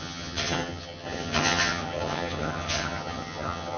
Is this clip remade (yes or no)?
yes